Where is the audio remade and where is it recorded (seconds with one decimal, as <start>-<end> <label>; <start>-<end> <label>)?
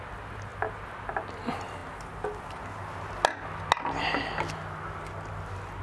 0.0-5.8 recorded